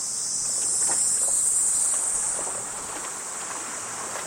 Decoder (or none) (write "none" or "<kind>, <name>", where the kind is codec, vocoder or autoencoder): none